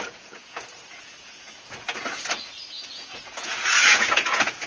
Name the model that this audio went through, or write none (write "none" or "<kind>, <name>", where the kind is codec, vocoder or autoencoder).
vocoder, Vocos